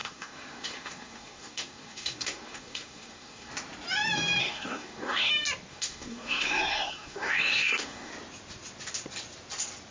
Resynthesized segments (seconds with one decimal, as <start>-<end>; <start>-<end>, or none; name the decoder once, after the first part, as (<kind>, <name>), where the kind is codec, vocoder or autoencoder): 0.0-3.5 (codec, SNAC); 4.4-5.3; 5.7-8.1